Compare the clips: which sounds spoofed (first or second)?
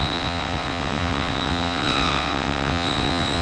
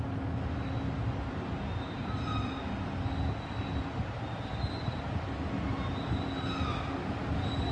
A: first